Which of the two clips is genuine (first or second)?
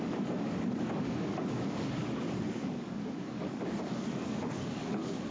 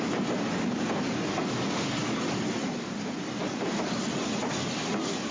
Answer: second